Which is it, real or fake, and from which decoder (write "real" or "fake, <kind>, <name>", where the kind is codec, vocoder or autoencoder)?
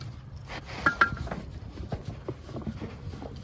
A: fake, vocoder, BigVGAN v2